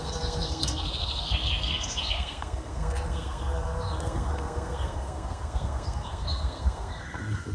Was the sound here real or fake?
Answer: fake